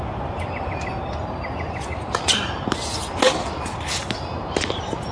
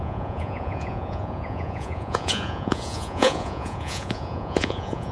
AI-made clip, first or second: second